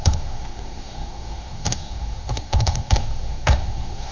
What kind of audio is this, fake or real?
fake